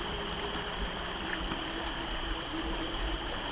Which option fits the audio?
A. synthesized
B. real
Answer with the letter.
B